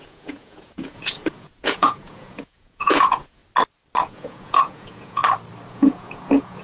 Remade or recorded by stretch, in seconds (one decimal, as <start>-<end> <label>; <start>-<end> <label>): 0.0-3.4 remade; 3.4-4.0 recorded; 4.0-5.2 remade; 5.2-5.7 recorded; 5.7-6.6 remade